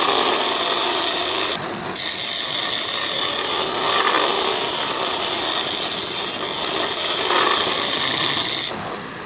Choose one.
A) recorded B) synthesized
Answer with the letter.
A